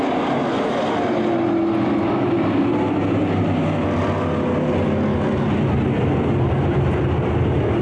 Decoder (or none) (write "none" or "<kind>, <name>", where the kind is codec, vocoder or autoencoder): none